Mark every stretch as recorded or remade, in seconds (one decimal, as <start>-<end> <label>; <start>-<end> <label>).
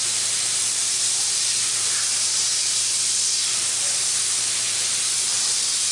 0.0-5.9 remade